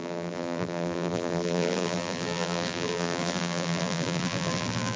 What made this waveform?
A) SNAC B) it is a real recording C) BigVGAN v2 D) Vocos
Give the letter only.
C